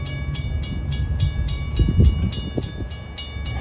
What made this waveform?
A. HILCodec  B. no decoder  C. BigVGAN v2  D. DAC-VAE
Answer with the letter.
B